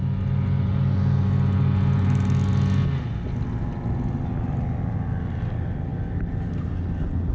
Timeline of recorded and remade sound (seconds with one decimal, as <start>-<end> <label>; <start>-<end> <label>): 0.0-7.3 recorded